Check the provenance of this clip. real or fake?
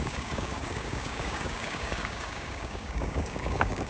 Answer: fake